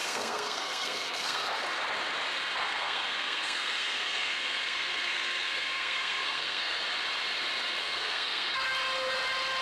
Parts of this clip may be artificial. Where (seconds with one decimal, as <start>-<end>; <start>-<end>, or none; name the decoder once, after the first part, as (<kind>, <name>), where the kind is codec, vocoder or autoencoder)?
0.0-1.5 (codec, SNAC); 2.6-6.8; 7.8-8.5